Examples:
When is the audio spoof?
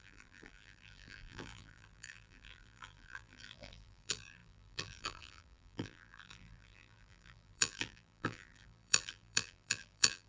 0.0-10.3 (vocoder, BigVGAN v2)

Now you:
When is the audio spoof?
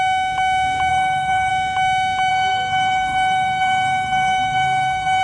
0.9-1.5 (codec, SNAC); 2.3-5.2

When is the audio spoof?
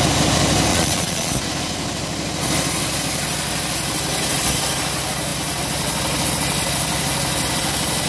0.7-1.3 (vocoder, Vocos)